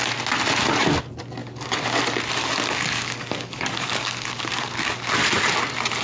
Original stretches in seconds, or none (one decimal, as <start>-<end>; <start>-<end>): 0.0-1.4; 2.0-2.4; 5.1-6.0